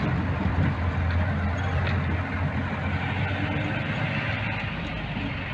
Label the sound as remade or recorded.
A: recorded